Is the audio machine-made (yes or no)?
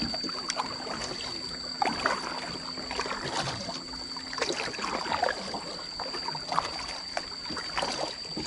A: no